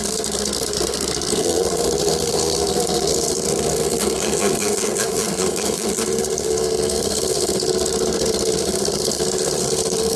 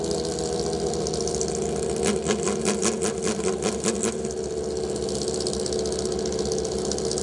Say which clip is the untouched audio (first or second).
second